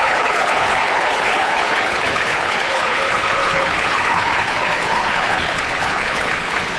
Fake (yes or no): yes